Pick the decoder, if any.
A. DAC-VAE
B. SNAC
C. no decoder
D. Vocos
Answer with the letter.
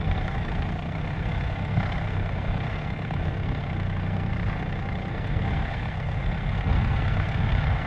B